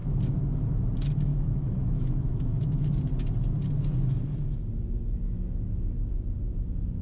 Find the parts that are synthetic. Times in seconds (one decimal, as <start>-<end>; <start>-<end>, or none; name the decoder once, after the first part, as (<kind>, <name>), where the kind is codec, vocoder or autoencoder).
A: 1.3-2.9 (autoencoder, DAC-VAE)